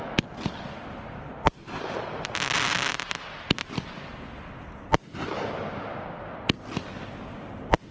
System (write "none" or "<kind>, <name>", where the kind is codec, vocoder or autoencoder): none